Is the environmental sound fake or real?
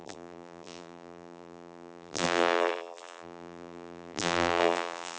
fake